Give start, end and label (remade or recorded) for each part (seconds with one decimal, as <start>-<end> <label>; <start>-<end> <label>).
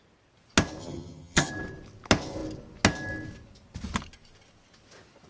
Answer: 0.0-0.8 recorded; 0.8-1.5 remade; 1.5-5.3 recorded